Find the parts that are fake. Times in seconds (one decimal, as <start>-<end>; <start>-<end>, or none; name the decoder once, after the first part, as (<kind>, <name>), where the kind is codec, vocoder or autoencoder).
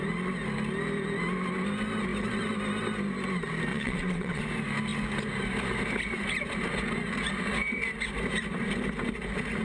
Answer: 3.7-4.4 (vocoder, WaveNeXt)